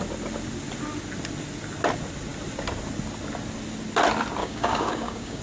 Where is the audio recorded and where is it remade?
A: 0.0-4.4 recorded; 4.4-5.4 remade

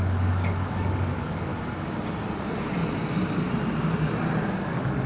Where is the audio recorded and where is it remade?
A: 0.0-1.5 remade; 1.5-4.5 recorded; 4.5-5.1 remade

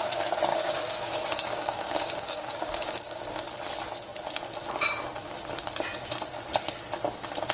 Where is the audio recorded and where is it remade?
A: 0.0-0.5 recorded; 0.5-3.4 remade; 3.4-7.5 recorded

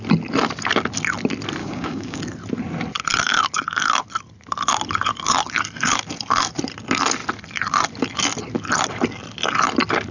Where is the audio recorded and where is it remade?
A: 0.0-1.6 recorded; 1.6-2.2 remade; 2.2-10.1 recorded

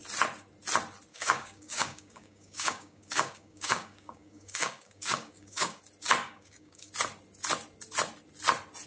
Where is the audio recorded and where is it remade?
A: 0.0-1.1 recorded; 1.1-5.8 remade; 5.8-6.2 recorded; 6.2-6.9 remade; 6.9-8.9 recorded